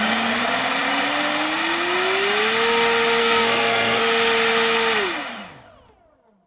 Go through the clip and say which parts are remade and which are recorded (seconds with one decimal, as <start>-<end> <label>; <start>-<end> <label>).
0.0-3.2 recorded; 3.2-4.0 remade; 4.0-6.5 recorded